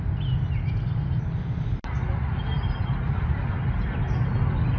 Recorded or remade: recorded